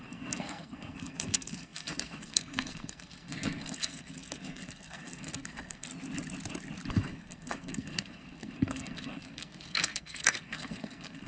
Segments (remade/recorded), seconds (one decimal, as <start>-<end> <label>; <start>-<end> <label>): 0.0-5.9 remade; 5.9-6.9 recorded; 6.9-11.3 remade